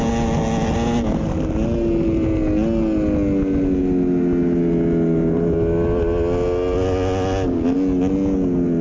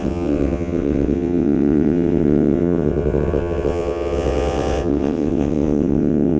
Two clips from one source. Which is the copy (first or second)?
second